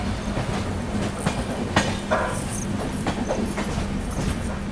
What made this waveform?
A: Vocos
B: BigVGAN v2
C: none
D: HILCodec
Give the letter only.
C